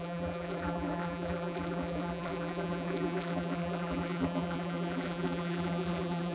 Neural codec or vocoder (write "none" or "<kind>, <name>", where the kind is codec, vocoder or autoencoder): vocoder, BigVGAN v2